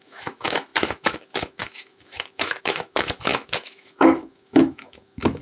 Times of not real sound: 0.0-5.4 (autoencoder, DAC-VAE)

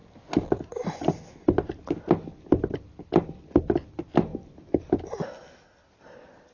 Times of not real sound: none

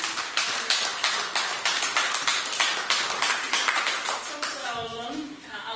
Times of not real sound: 4.6-5.8 (autoencoder, DAC-VAE)